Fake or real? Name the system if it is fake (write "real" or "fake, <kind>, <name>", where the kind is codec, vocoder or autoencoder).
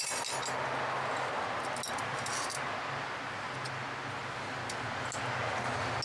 real